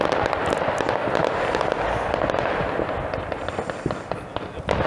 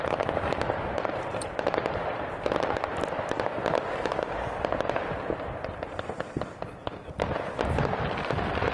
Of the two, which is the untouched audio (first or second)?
first